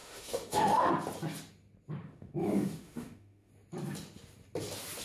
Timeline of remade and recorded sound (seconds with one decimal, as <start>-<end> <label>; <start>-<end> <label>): 0.0-0.9 remade; 0.9-2.0 recorded; 2.0-3.5 remade; 3.5-5.0 recorded